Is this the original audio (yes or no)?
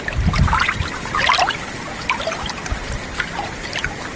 yes